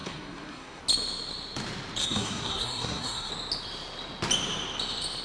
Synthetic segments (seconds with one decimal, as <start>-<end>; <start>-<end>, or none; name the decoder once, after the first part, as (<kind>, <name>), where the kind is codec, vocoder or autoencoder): 0.0-0.8 (codec, SNAC); 2.0-3.3